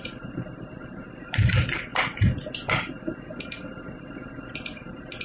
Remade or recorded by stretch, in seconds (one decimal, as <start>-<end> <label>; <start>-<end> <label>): 0.0-5.2 remade